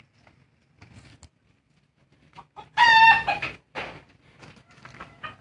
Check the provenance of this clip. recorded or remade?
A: recorded